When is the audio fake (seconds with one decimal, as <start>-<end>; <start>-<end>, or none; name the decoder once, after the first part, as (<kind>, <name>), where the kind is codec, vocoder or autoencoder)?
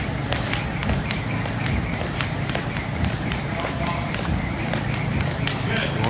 0.8-4.2 (vocoder, BigVGAN v2)